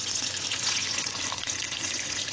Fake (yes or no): yes